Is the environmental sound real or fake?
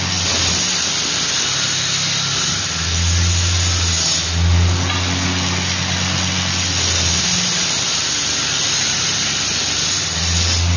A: real